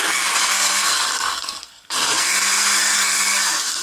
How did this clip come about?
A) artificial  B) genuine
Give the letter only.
A